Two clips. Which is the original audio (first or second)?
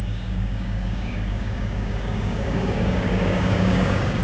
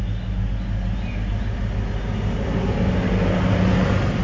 second